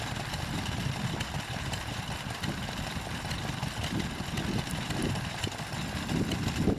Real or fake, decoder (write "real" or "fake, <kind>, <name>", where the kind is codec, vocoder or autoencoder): real